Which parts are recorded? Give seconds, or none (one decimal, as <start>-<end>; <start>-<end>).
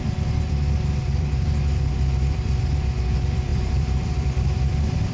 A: none